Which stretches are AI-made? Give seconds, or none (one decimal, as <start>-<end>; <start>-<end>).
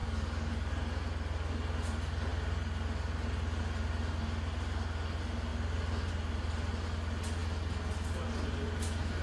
0.0-0.7